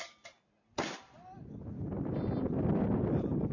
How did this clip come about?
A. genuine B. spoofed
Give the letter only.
A